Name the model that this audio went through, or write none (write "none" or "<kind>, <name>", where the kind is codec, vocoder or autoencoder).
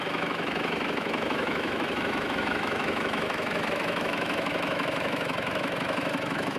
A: autoencoder, DAC-VAE